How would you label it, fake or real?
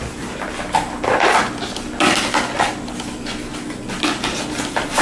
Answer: real